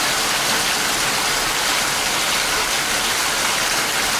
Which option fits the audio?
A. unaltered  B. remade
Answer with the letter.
A